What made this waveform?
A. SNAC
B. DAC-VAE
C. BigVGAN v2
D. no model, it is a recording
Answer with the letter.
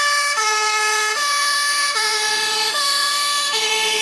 B